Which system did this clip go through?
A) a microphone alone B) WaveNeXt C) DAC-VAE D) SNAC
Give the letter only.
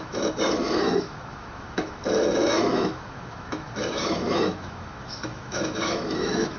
C